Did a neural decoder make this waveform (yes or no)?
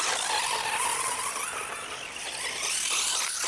no